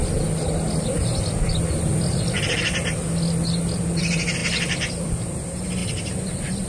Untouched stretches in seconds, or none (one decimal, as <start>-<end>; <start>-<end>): 0.0-4.0; 4.4-4.9